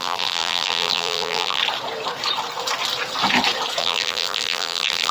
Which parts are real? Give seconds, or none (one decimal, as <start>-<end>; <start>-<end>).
1.6-3.8